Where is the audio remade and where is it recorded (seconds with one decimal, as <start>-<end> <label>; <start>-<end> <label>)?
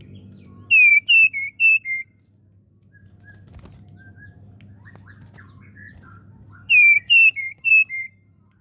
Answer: 0.0-0.9 recorded; 0.9-2.7 remade; 2.7-5.7 recorded; 5.7-7.7 remade; 7.7-8.6 recorded